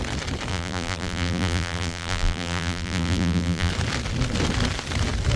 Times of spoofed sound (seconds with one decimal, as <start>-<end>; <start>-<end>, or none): 0.5-3.7